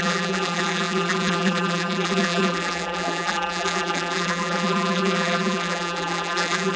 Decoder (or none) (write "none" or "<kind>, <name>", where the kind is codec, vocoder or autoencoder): vocoder, BigVGAN v2